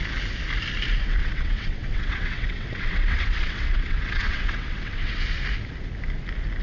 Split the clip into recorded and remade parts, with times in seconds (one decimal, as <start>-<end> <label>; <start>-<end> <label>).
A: 0.0-1.2 recorded; 1.2-5.2 remade; 5.2-6.6 recorded